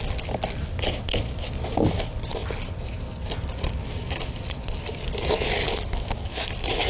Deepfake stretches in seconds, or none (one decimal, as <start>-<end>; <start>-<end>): none